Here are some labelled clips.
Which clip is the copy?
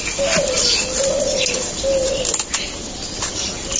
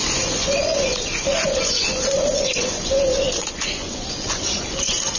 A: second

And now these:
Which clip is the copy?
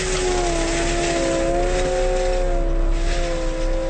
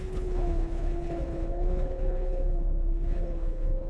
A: second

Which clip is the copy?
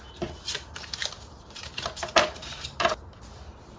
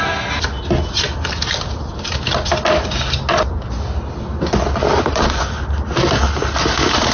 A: first